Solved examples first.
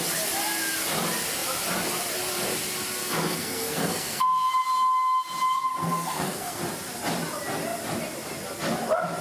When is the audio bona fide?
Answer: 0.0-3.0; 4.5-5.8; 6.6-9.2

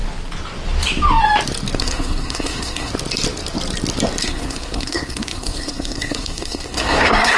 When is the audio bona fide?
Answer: 0.0-1.8; 2.9-4.2

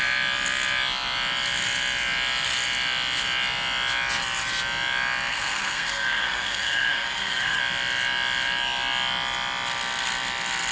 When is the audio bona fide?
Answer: 0.0-5.3; 7.6-10.7

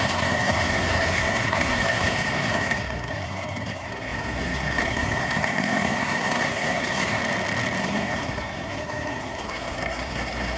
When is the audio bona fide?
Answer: 7.2-7.8

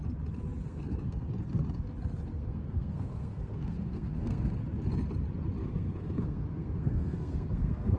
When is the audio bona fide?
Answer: 0.0-0.6; 1.3-2.3; 4.5-5.6

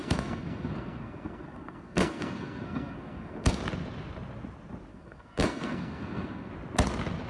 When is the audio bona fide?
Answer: 3.6-4.9; 6.5-7.3

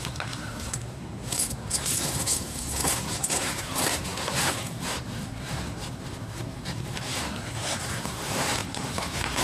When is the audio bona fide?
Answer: none

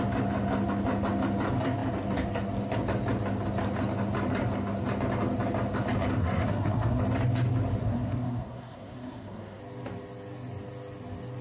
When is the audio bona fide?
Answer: 0.0-6.2; 7.0-7.8; 9.6-11.4